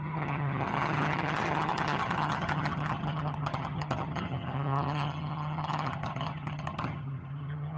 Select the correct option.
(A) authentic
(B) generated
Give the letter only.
B